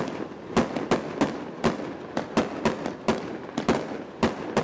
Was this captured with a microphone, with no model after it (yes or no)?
yes